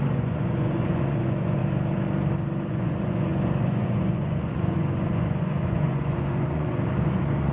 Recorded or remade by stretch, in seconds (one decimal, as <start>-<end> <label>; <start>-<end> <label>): 0.0-1.6 remade; 1.6-2.7 recorded; 2.7-7.5 remade